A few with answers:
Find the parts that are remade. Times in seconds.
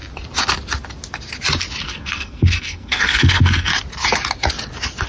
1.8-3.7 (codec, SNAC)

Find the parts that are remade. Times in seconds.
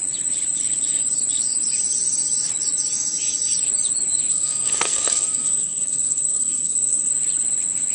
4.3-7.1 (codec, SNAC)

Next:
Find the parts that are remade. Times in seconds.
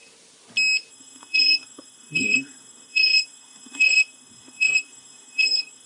0.9-5.9 (codec, SNAC)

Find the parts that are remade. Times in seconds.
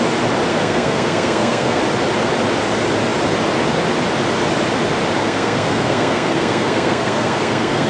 0.5-1.8 (codec, SNAC); 5.2-7.9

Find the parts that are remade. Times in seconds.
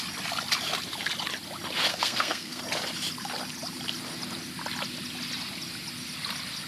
1.9-2.6 (codec, SNAC)